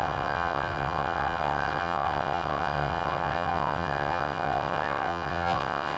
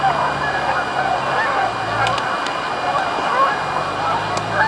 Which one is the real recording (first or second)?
second